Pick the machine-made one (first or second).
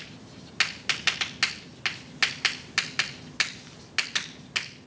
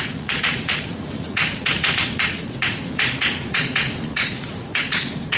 second